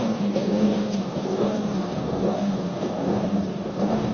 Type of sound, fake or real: fake